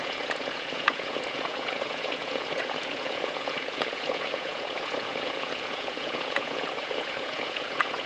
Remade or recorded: remade